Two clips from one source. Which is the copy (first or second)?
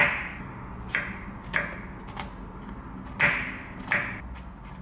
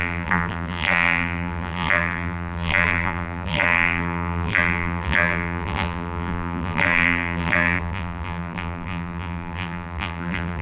second